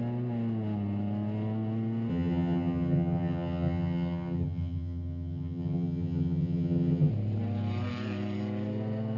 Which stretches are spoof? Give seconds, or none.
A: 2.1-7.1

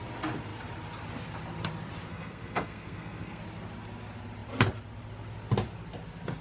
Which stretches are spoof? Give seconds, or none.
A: 2.1-3.4